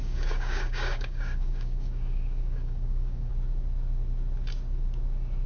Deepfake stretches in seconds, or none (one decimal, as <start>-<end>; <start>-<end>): 0.0-3.3

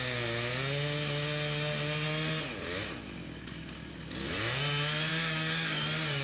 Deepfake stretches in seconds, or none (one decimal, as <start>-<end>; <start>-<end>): 5.1-5.8

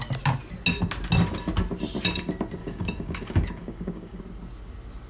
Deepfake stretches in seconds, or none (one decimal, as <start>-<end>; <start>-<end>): 2.6-4.2

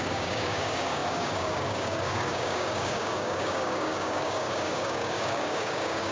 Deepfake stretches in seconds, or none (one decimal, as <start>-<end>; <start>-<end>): 0.0-6.1

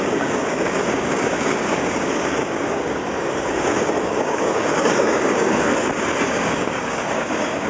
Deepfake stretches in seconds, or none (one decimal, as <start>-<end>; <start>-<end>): 0.0-5.7; 6.3-7.7